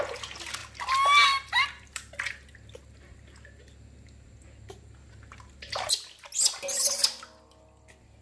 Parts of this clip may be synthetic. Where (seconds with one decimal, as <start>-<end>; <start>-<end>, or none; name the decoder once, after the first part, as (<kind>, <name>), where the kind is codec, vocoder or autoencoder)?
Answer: none